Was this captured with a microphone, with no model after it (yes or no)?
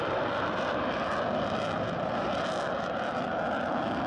yes